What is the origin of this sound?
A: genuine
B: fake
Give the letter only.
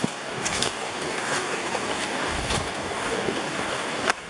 B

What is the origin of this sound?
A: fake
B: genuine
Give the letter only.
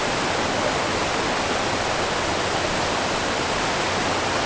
B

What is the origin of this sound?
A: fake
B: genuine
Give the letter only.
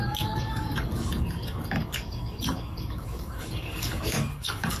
A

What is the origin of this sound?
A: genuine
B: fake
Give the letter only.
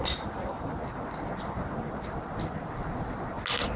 A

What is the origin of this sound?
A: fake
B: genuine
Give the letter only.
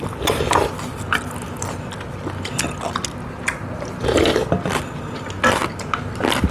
B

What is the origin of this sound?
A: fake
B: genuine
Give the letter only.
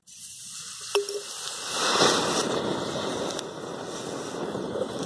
B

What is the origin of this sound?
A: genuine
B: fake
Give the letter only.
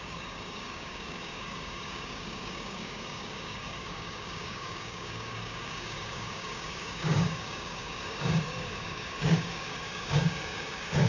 B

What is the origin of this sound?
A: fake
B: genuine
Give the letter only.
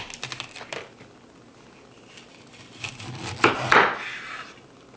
B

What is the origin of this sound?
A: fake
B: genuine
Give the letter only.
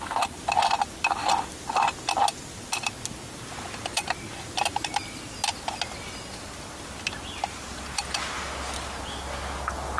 B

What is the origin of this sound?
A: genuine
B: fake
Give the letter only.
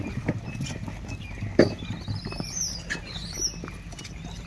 A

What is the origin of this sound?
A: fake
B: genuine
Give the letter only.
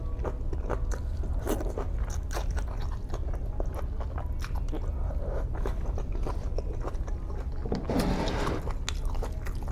B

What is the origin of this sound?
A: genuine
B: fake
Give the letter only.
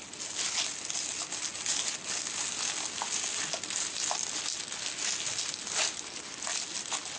A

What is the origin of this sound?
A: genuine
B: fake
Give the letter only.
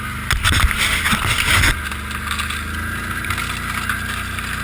A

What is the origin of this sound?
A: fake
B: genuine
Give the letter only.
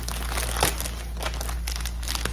B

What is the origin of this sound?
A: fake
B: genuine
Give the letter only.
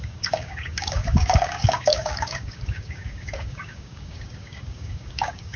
A